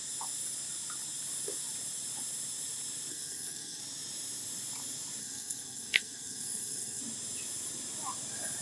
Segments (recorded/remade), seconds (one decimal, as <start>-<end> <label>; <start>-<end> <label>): 0.0-3.1 recorded; 3.1-3.8 remade; 3.8-5.2 recorded; 5.2-7.0 remade; 7.0-8.6 recorded